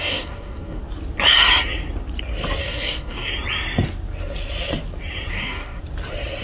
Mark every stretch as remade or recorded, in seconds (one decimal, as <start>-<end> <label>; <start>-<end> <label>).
0.0-0.8 remade; 0.8-2.6 recorded; 2.6-3.3 remade; 3.3-5.3 recorded; 5.3-5.8 remade; 5.8-6.4 recorded